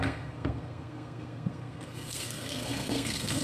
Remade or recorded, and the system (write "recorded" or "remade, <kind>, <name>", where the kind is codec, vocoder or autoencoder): remade, codec, SNAC